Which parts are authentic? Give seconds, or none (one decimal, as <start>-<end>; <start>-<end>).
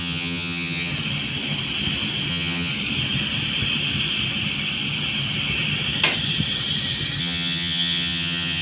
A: 0.9-2.3; 2.7-7.2